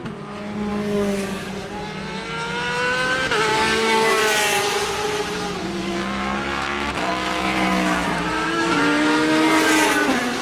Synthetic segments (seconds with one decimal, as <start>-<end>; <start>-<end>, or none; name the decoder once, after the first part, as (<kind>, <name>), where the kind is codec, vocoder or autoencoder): 0.7-1.5 (codec, DAC); 3.5-4.2; 5.6-8.8

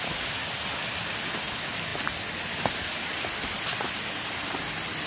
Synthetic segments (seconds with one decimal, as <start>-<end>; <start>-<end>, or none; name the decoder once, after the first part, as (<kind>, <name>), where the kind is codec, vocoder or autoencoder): none

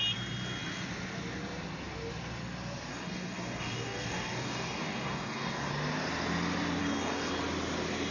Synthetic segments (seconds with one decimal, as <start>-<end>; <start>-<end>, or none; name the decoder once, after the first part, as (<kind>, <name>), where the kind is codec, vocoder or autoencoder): 2.9-5.7 (codec, DAC); 6.8-7.3

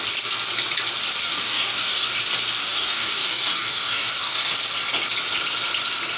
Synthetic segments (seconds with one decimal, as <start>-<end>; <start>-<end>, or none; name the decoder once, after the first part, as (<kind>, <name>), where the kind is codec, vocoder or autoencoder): 1.2-2.2 (codec, DAC); 2.6-4.5

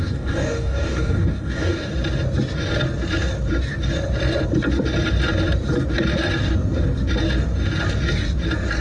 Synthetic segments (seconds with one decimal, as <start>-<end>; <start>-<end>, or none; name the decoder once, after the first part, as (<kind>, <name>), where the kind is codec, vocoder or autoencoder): 0.0-1.9 (codec, DAC)

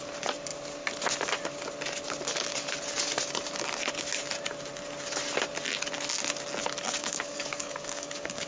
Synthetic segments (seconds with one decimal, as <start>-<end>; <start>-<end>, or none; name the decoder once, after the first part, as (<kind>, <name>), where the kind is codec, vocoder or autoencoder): 7.0-8.5 (codec, DAC)